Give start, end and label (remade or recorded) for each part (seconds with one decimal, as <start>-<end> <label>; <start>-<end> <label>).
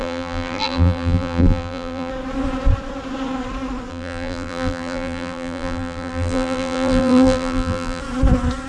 0.0-2.1 remade; 2.1-3.9 recorded; 3.9-8.0 remade; 8.0-8.7 recorded